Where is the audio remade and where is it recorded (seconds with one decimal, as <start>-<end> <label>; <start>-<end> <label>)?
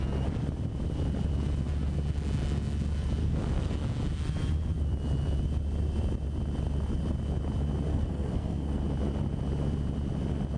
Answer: 0.0-3.2 recorded; 3.2-3.7 remade; 3.7-7.9 recorded; 7.9-8.8 remade; 8.8-10.6 recorded